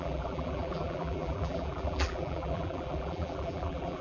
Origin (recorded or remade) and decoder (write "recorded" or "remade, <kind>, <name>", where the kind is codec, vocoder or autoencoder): remade, vocoder, BigVGAN v2